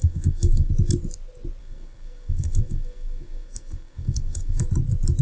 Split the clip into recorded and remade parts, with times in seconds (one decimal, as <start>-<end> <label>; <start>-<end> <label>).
0.0-0.7 remade; 0.7-1.6 recorded; 1.6-4.7 remade; 4.7-5.2 recorded